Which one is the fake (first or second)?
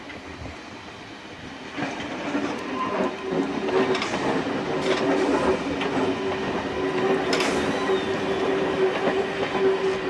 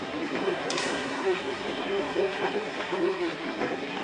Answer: second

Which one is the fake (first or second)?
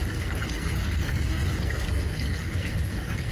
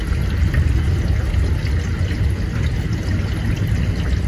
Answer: first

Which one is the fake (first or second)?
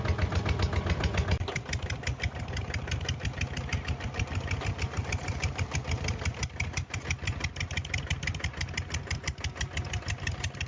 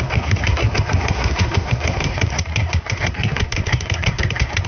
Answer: second